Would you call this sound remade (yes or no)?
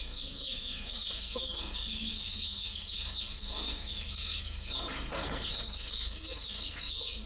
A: yes